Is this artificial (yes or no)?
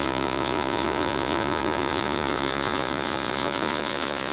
yes